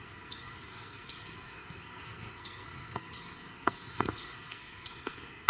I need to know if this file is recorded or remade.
remade